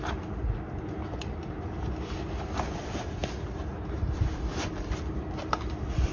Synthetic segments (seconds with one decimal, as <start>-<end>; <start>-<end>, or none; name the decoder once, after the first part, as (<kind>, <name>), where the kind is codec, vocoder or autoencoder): none